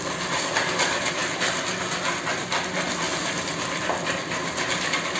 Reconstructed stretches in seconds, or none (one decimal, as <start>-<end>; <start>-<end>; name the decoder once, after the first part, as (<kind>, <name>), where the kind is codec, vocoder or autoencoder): none